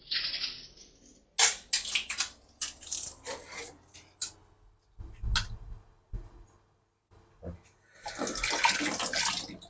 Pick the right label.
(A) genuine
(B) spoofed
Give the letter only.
A